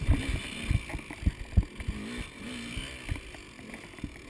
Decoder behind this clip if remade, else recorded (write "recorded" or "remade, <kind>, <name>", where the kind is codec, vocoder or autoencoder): recorded